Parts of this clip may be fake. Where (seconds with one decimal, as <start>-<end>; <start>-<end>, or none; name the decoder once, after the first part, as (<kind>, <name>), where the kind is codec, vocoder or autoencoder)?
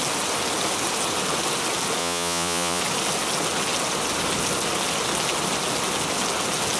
2.0-2.8 (vocoder, Vocos)